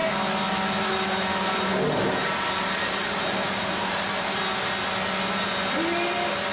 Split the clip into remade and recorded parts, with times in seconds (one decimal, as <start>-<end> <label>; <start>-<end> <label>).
0.0-6.5 recorded